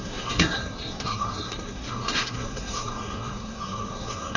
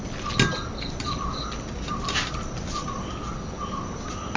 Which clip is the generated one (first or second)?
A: first